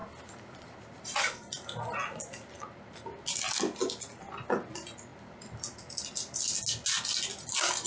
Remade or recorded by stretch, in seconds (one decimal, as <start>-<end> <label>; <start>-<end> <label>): 0.0-1.5 remade; 1.5-5.1 recorded; 5.1-6.1 remade; 6.1-7.9 recorded